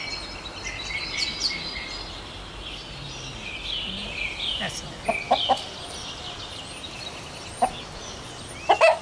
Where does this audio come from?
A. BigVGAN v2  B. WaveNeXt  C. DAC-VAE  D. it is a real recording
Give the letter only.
D